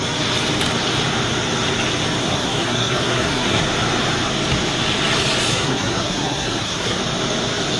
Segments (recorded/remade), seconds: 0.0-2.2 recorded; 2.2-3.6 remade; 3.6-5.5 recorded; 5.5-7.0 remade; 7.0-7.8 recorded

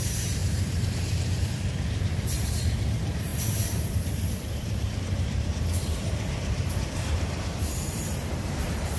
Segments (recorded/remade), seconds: 0.0-9.0 remade

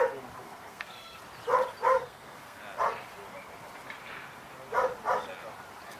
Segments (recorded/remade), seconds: 0.0-0.4 recorded; 0.4-1.2 remade; 1.2-1.9 recorded; 1.9-2.6 remade; 2.6-6.0 recorded